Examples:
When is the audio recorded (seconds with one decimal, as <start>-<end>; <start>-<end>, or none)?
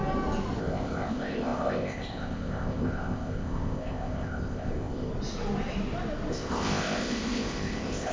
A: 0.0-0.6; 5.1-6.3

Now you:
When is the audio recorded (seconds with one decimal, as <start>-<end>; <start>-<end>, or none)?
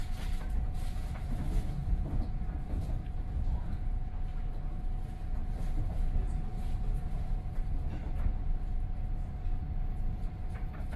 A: 4.1-6.2; 7.4-11.0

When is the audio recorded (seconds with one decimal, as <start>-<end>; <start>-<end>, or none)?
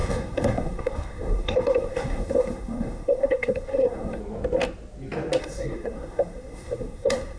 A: 4.2-5.4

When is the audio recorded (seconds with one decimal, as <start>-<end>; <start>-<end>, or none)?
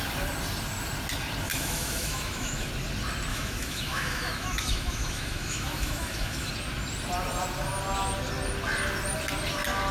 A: 0.0-1.5; 2.7-3.3; 6.5-9.9